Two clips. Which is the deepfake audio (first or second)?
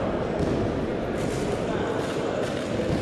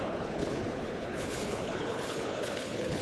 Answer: second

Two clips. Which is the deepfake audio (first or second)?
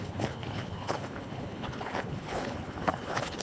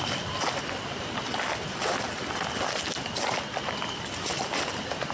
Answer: first